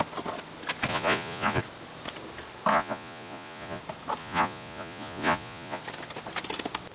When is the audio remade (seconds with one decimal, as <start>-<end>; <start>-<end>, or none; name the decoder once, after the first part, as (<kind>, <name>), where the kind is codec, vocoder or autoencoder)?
0.9-1.6 (vocoder, Vocos); 2.7-3.8; 4.2-5.8